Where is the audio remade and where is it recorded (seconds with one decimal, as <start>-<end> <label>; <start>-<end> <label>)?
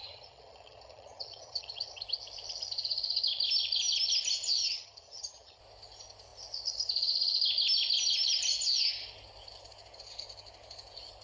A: 0.0-2.0 remade; 2.0-4.6 recorded; 4.6-5.6 remade; 5.6-11.2 recorded